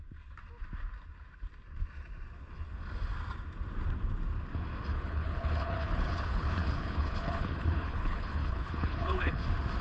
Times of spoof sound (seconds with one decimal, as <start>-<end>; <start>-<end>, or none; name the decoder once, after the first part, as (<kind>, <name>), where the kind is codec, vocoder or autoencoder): 4.9-9.4 (codec, HILCodec)